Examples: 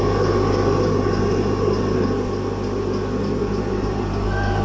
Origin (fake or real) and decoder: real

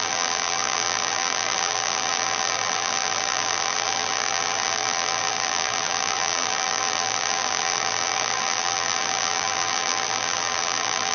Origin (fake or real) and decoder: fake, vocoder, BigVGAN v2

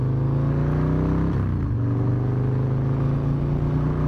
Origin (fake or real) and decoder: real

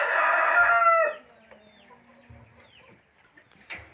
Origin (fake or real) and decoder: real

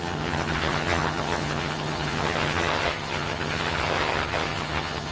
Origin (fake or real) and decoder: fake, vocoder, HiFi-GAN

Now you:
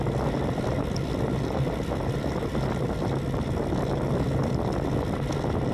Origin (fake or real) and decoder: real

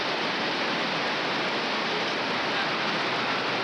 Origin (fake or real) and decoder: real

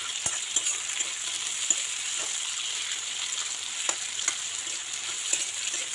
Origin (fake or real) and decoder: real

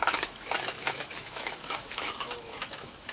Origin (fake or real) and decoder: fake, autoencoder, DAC-VAE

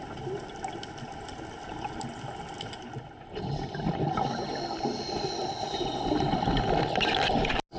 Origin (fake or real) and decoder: real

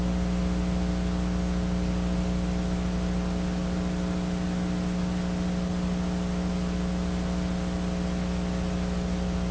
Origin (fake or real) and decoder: real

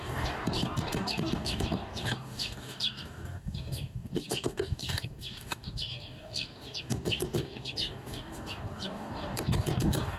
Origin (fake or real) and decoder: fake, codec, DAC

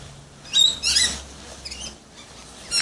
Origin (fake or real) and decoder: real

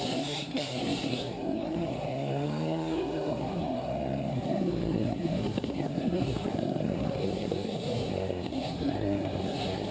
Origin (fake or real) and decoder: fake, codec, SNAC